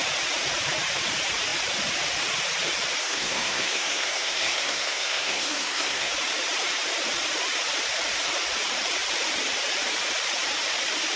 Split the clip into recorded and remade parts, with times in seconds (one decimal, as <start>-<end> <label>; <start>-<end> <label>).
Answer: 0.0-3.0 recorded; 3.0-6.1 remade; 6.1-11.2 recorded